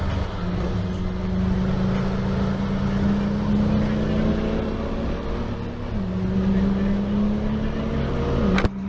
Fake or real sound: real